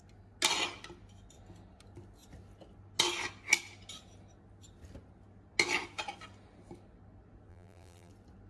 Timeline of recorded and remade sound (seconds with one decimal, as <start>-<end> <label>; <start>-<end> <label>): 0.0-7.5 recorded; 7.5-8.1 remade; 8.1-8.5 recorded